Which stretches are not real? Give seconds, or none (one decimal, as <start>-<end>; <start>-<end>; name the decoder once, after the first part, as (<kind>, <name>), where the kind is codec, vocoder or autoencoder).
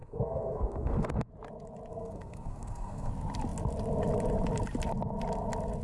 0.0-1.3 (codec, SNAC); 1.9-3.1